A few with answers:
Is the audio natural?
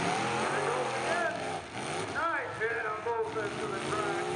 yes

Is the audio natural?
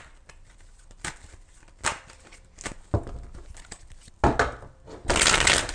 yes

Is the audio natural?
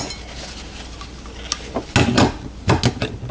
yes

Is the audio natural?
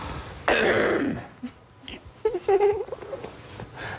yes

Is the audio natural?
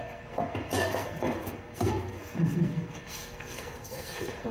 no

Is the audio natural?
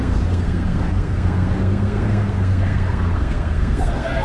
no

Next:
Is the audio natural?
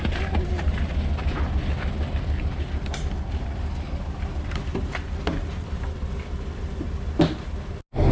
yes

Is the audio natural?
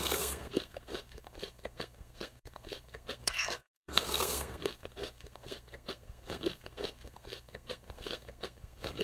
no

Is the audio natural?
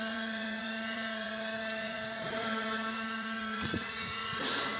no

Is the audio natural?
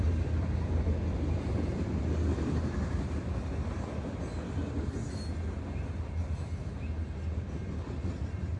yes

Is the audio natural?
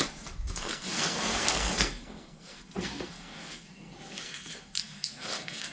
no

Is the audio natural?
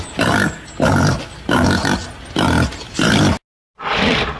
yes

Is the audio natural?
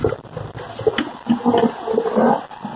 yes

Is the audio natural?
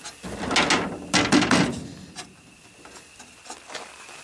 yes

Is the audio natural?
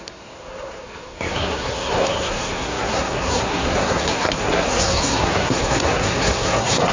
no